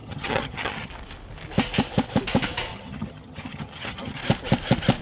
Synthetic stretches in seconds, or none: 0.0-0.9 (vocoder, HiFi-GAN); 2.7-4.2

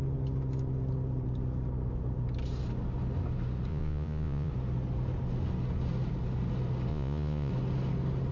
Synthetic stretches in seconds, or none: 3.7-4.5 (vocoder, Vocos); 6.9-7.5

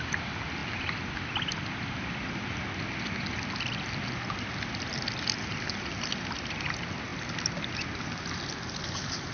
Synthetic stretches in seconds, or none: none

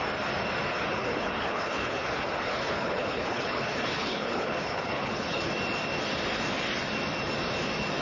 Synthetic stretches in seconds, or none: 0.7-5.5 (codec, HILCodec)

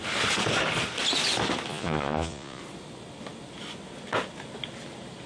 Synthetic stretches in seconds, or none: 1.7-2.6 (vocoder, Vocos)